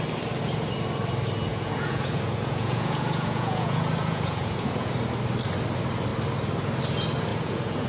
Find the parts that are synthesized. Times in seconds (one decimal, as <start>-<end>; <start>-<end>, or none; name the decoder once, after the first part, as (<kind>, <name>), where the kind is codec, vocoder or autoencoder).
1.5-4.9 (vocoder, Vocos); 7.3-7.9